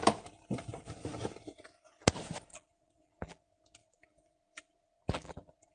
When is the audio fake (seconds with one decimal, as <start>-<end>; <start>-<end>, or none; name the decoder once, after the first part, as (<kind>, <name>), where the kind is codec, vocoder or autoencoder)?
2.5-3.4 (vocoder, BigVGAN v2); 3.8-5.7